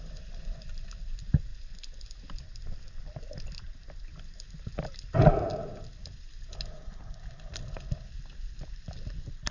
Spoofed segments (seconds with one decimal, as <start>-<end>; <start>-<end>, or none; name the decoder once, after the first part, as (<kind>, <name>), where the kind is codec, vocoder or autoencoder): 0.0-1.5 (vocoder, BigVGAN v2); 6.5-9.5